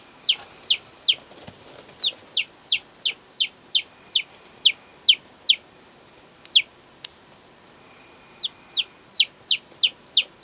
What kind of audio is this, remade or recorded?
recorded